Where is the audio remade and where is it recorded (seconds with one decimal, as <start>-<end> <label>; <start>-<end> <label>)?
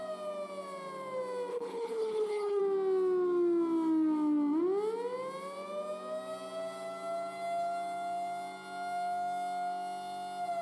0.0-1.5 recorded; 1.5-2.6 remade; 2.6-10.6 recorded